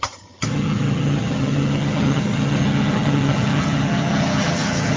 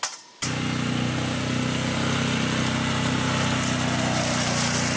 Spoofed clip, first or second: first